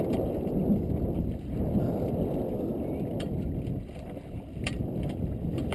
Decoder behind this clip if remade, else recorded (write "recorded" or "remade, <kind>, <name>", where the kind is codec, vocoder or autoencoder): remade, vocoder, BigVGAN v2